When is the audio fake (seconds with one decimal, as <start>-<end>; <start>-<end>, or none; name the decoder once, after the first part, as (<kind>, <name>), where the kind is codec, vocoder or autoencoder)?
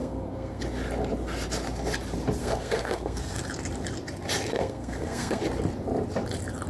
0.0-0.6 (codec, SNAC); 2.4-3.4; 4.5-5.4